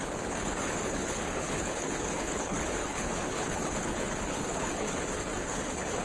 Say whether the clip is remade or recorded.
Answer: remade